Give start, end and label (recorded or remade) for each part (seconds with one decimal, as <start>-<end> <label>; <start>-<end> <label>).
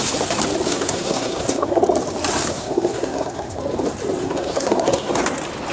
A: 0.0-0.7 recorded; 0.7-1.8 remade; 1.8-2.5 recorded; 2.5-3.6 remade; 3.6-4.2 recorded; 4.2-5.1 remade; 5.1-5.7 recorded